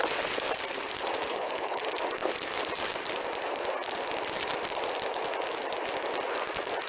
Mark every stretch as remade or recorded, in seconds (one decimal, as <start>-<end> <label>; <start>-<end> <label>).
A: 0.0-1.3 recorded; 1.3-1.8 remade; 1.8-6.9 recorded